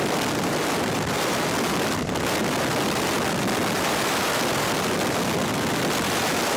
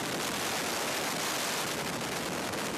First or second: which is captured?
second